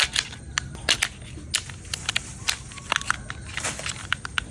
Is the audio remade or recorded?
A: recorded